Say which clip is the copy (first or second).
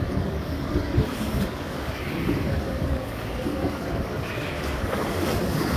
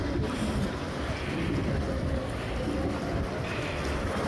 first